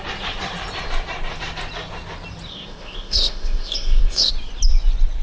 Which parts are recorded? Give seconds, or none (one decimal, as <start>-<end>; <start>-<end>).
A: 0.0-2.5; 4.3-5.2